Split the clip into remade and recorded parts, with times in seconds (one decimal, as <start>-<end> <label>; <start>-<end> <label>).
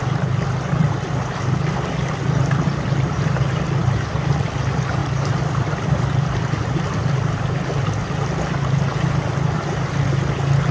0.0-3.8 recorded; 3.8-4.4 remade; 4.4-5.0 recorded; 5.0-7.8 remade; 7.8-10.7 recorded